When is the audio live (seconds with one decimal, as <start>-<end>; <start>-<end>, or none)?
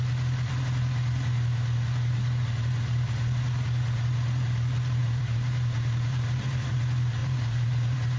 0.0-5.0; 6.8-7.2